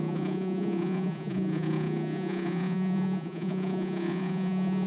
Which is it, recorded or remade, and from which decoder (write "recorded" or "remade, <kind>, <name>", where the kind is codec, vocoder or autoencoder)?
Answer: remade, vocoder, Vocos